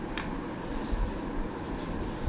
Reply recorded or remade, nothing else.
recorded